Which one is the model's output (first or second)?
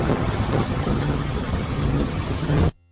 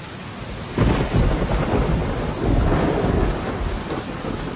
first